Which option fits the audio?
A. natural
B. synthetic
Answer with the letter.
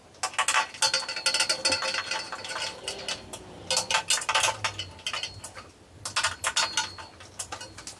A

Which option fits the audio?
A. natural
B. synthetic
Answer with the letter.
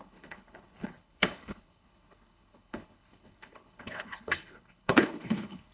B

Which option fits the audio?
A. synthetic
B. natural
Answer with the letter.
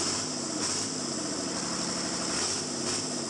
B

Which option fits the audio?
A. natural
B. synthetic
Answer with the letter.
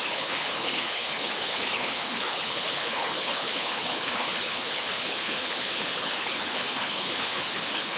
B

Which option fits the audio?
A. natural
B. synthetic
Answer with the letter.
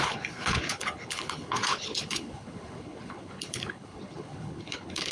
B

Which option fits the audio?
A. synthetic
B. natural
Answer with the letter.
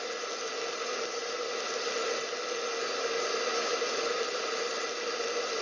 B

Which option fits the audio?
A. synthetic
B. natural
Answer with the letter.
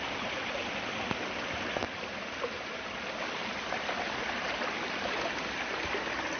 B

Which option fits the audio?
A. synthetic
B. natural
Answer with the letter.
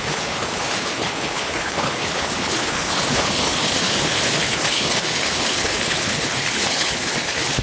A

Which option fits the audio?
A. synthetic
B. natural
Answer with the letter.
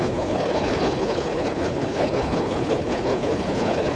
A